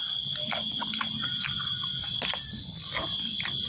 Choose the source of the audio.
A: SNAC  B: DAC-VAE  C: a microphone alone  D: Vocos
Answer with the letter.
C